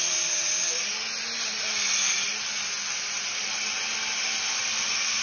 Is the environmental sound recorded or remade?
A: recorded